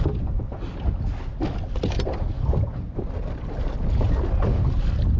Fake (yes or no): no